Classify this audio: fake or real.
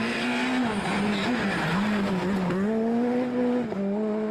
real